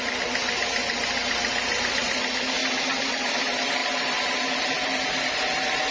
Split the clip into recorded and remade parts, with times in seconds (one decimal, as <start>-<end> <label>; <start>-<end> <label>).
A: 0.0-5.9 recorded